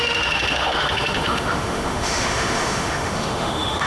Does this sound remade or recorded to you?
remade